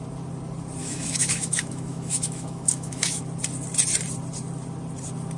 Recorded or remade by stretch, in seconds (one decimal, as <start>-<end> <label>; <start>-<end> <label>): 0.0-0.8 recorded; 0.8-3.2 remade; 3.2-5.4 recorded